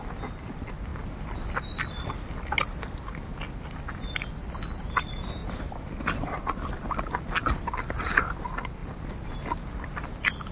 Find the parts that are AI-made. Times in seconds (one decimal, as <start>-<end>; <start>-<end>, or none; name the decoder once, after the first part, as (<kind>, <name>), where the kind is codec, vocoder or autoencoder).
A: none